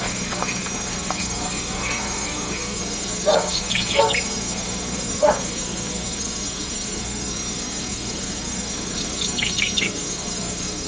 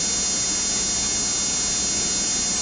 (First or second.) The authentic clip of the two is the second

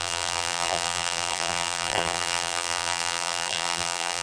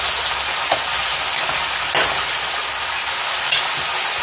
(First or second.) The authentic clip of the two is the second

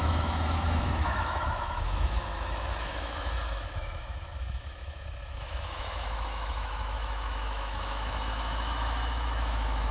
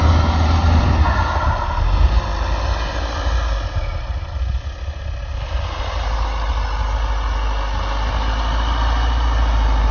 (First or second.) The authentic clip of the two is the second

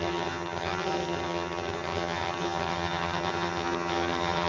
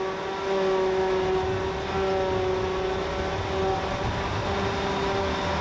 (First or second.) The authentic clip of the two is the second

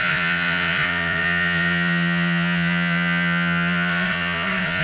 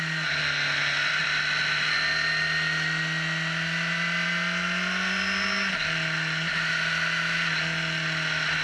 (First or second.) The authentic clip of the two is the second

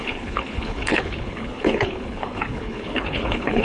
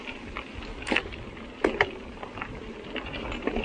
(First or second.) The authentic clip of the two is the second